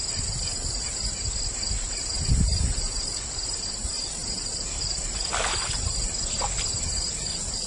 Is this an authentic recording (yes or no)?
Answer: yes